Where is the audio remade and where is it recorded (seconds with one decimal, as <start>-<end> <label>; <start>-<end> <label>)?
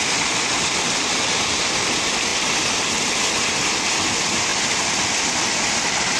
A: 0.0-6.2 recorded